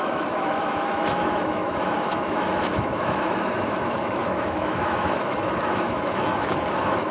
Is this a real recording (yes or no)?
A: no